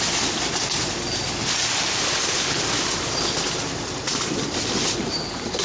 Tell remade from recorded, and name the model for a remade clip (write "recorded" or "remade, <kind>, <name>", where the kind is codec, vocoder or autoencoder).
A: recorded